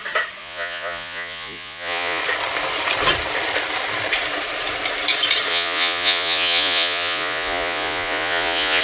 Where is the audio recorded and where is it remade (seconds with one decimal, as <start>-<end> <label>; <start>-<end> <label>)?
0.0-0.4 recorded; 0.4-2.2 remade; 2.2-5.5 recorded; 5.5-8.8 remade